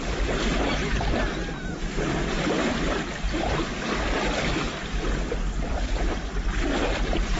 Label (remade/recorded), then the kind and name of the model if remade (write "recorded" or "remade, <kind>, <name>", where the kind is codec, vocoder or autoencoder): remade, vocoder, BigVGAN v2